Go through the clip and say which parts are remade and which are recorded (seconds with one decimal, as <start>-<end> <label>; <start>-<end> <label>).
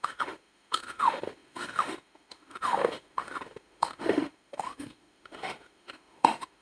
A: 0.0-6.6 remade